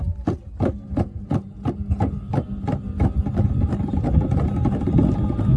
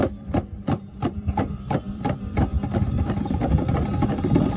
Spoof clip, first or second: second